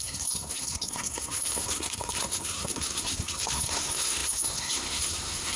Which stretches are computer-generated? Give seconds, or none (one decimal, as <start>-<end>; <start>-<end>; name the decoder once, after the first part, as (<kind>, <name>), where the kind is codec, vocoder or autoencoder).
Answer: 0.0-5.6 (codec, SNAC)